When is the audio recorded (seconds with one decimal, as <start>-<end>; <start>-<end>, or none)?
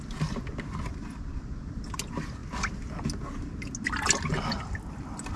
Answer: 0.0-5.4